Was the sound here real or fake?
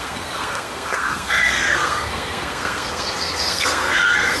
fake